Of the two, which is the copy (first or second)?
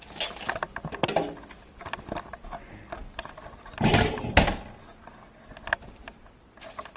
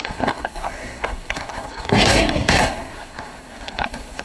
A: second